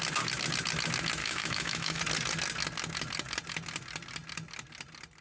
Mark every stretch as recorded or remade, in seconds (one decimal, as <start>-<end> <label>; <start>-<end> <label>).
0.0-1.2 recorded; 1.2-2.0 remade; 2.0-5.2 recorded